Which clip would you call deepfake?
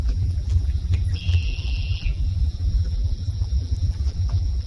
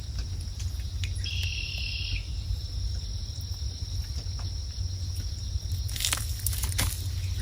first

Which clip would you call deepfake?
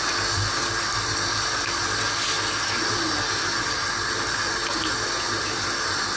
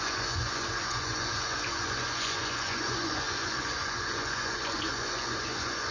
second